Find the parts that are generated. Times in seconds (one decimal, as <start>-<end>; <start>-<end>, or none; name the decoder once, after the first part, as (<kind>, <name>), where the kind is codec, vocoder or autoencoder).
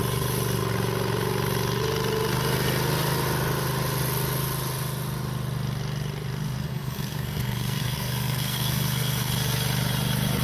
6.6-9.3 (codec, SNAC)